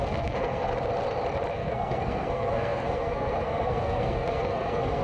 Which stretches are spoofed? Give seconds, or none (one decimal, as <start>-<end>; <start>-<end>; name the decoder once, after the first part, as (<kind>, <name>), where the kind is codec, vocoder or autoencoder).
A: 0.0-0.7 (codec, SNAC); 1.5-5.0